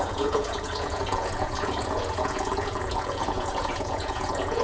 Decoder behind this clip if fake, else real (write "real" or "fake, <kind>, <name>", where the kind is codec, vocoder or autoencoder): fake, vocoder, Vocos